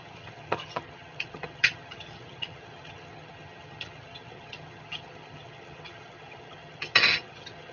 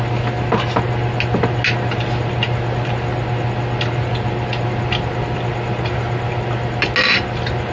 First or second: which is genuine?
second